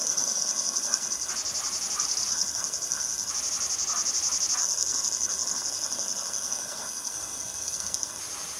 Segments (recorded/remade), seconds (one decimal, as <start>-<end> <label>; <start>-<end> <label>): 0.0-1.3 remade; 1.3-2.3 recorded; 2.3-3.3 remade; 3.3-4.6 recorded; 4.6-8.2 remade; 8.2-8.6 recorded